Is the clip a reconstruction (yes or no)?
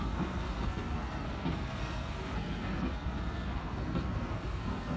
yes